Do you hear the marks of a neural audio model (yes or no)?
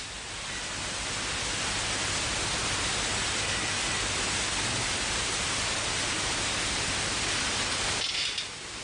no